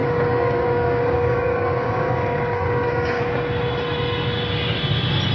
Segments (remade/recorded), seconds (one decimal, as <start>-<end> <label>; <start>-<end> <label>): 0.0-3.2 remade; 3.2-5.3 recorded